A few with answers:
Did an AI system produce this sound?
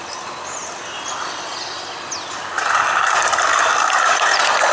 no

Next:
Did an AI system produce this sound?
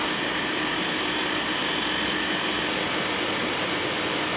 no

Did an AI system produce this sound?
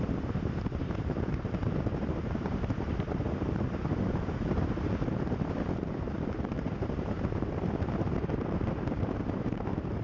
yes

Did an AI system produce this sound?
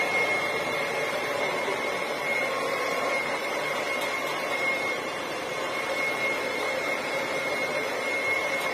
yes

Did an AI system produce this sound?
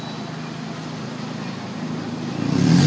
no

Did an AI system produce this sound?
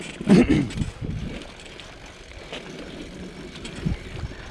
no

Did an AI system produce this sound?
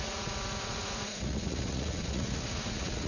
yes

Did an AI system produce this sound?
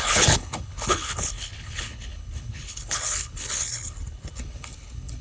yes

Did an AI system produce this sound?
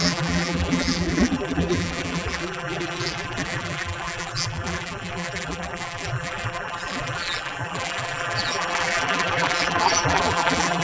yes